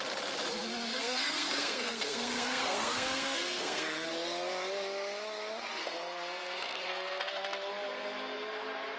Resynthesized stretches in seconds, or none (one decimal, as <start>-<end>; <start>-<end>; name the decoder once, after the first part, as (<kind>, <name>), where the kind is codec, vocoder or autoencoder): 0.9-4.1 (codec, SNAC); 5.8-7.7